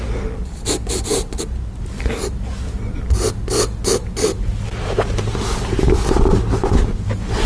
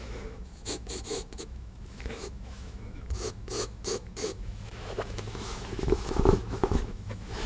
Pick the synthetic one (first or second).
second